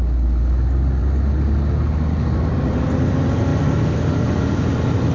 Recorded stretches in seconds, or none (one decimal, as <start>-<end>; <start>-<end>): 0.0-5.1